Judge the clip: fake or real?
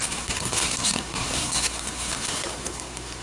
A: fake